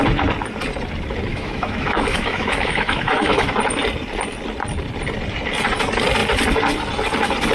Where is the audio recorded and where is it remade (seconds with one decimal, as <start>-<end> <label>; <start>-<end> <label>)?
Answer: 0.0-1.3 recorded; 1.3-3.5 remade; 3.5-7.5 recorded